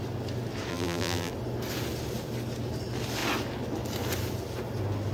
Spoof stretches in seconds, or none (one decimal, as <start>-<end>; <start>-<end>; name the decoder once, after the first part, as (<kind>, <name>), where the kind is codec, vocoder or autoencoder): 0.7-1.3 (vocoder, BigVGAN v2)